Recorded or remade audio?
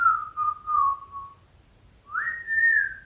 recorded